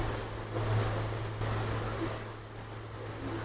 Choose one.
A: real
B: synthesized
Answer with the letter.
A